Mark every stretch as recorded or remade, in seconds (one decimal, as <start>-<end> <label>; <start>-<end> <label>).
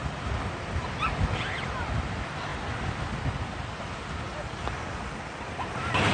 0.0-6.1 recorded